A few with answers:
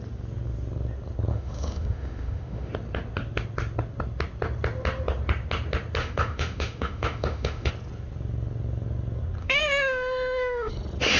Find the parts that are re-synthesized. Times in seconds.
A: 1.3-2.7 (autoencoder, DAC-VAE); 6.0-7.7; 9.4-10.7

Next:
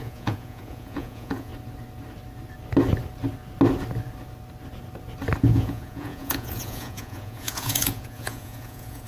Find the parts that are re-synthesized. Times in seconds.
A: 0.0-1.5 (vocoder, Vocos); 5.4-9.1